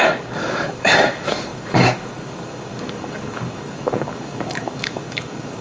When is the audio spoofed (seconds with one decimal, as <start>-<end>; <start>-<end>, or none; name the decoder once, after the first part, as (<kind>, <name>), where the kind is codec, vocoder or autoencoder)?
0.0-5.6 (codec, DAC)